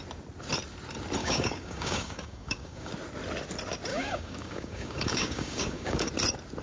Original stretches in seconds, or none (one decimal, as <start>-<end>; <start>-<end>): 0.0-1.2; 2.9-3.9; 6.1-6.6